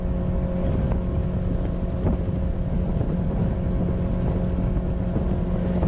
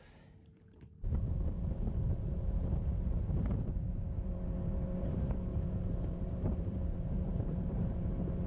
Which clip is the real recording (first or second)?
first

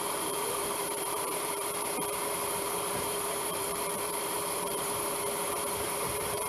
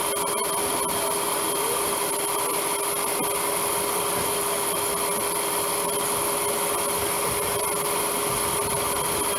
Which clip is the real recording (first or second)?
second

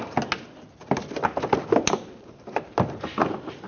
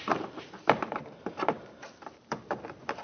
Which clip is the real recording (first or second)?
first